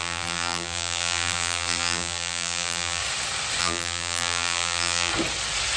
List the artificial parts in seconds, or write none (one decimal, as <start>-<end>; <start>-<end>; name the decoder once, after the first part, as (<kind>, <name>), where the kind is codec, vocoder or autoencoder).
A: 0.0-3.0 (vocoder, BigVGAN v2); 3.6-5.1